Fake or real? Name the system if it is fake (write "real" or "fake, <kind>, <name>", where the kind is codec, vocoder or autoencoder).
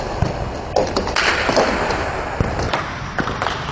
real